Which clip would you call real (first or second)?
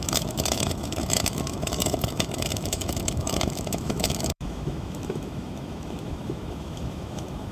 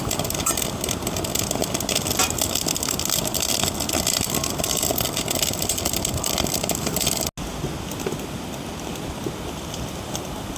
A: second